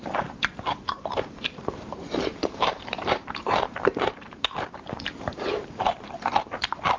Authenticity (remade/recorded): remade